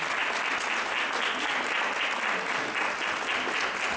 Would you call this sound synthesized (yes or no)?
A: no